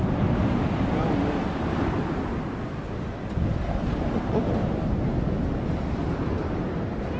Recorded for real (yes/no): yes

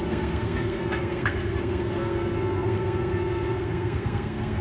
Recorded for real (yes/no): no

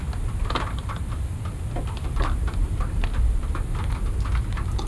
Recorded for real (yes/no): yes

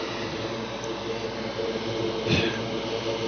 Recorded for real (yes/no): yes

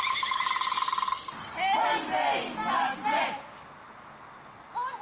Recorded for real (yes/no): yes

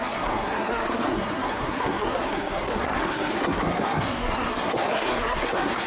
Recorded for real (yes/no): no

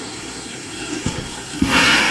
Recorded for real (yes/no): no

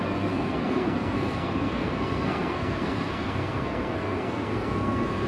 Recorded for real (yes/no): no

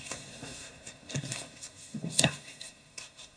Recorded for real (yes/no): no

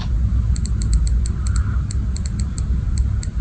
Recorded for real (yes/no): yes